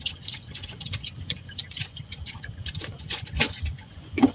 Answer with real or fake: fake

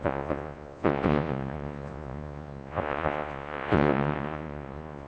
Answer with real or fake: fake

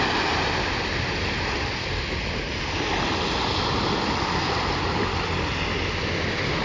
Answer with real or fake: real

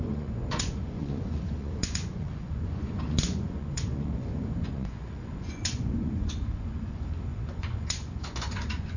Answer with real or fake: fake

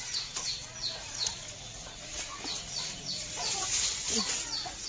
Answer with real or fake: fake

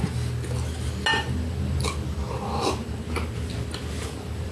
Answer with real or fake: real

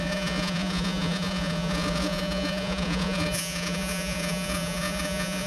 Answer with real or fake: fake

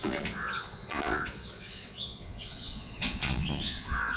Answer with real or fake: fake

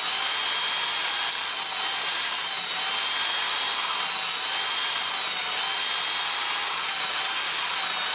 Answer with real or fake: real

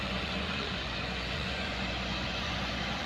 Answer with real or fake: fake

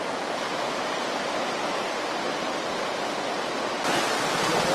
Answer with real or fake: real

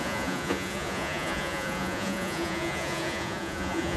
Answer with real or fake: fake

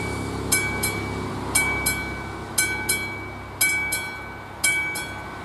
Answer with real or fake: real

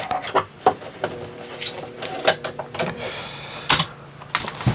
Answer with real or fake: real